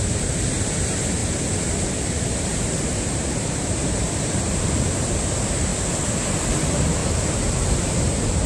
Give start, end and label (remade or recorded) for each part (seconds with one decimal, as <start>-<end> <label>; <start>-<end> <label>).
0.0-1.2 remade; 1.2-2.2 recorded; 2.2-5.7 remade; 5.7-6.5 recorded; 6.5-7.0 remade; 7.0-7.6 recorded; 7.6-8.5 remade